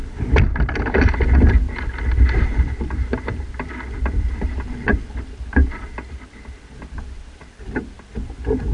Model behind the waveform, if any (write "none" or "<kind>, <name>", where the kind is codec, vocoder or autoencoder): none